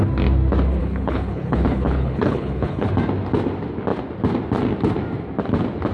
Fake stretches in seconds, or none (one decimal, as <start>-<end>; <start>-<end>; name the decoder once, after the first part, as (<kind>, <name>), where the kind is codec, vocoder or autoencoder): 0.8-2.9 (codec, HILCodec)